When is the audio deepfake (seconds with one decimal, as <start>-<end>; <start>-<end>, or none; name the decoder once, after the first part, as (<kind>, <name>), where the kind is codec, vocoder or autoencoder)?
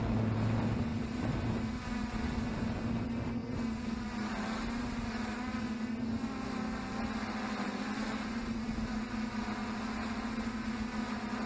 none